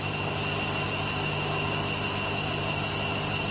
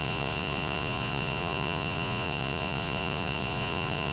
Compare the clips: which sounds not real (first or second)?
second